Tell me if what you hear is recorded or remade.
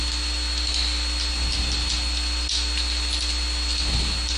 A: recorded